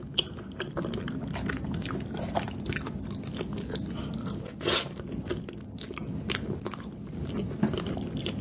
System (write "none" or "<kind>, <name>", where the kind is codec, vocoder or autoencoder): none